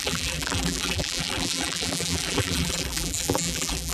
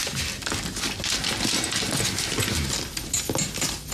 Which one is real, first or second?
second